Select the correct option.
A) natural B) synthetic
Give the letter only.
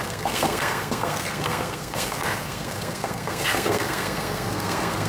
B